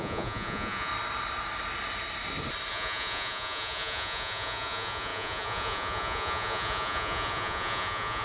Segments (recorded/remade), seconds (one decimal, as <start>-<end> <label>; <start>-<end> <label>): 0.0-0.9 remade; 0.9-2.7 recorded; 2.7-8.2 remade